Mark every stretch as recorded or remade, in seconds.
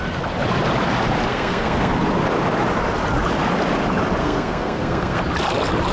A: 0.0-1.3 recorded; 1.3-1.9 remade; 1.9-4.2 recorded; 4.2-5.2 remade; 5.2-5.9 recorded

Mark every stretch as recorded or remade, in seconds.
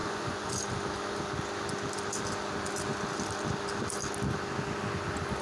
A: 0.0-0.5 remade; 0.5-5.4 recorded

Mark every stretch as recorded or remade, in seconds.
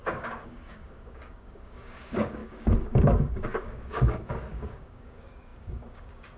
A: 0.0-6.4 remade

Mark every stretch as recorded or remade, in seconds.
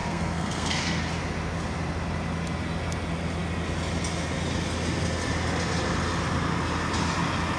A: 0.0-1.0 remade; 1.0-7.6 recorded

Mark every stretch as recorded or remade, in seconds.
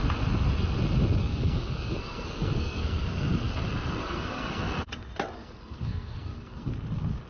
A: 0.0-1.2 recorded; 1.2-3.5 remade; 3.5-4.0 recorded; 4.0-4.6 remade; 4.6-5.4 recorded; 5.4-6.7 remade; 6.7-7.3 recorded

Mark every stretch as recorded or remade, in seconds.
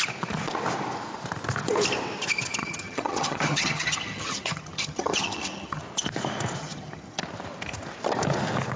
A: 0.0-2.6 recorded; 2.6-5.8 remade; 5.8-6.6 recorded; 6.6-7.2 remade; 7.2-8.8 recorded